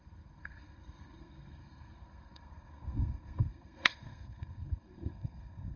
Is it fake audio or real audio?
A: fake